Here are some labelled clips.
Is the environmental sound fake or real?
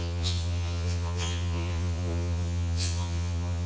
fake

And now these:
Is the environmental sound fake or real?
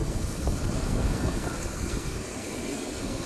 fake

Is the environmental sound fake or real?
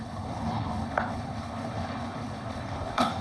fake